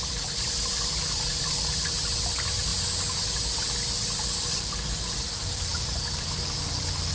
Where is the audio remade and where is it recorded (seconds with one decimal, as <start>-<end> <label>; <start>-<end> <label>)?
0.0-2.7 remade; 2.7-4.5 recorded; 4.5-5.7 remade; 5.7-7.1 recorded